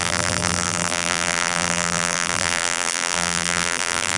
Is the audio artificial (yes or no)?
yes